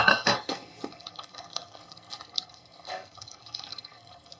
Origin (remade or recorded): remade